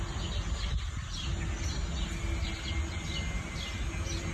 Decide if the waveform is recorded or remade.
recorded